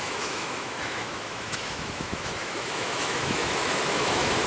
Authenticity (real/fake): fake